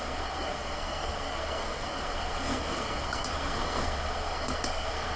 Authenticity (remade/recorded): remade